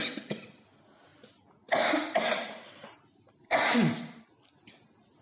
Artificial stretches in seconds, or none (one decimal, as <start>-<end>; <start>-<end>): none